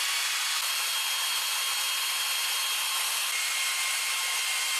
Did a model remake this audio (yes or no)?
no